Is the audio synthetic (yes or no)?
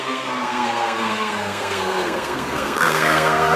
yes